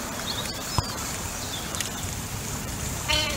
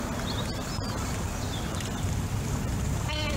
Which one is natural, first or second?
second